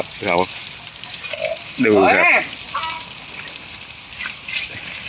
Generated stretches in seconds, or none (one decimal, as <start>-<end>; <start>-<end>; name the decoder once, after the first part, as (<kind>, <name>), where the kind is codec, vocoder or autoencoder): 0.0-2.0 (vocoder, BigVGAN v2)